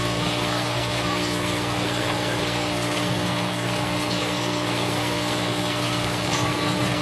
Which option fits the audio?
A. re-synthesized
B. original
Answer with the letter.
A